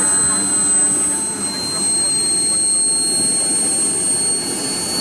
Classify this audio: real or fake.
real